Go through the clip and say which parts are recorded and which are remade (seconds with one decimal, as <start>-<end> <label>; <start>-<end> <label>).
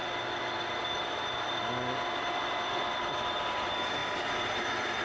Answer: 0.0-5.0 recorded